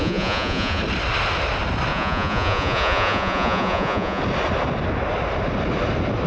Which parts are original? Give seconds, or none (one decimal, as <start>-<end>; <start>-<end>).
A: 0.8-1.9; 4.2-6.3